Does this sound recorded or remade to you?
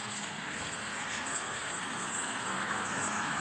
remade